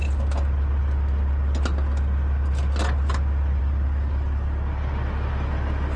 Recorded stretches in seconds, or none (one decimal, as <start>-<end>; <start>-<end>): 0.0-6.0